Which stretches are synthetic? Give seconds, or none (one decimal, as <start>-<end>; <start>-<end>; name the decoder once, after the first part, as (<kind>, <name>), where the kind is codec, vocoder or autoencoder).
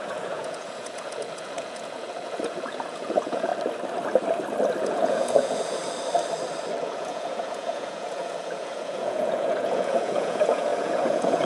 0.0-3.5 (vocoder, Vocos); 4.8-5.8; 6.8-11.5